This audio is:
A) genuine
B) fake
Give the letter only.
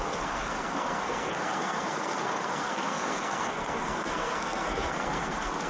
B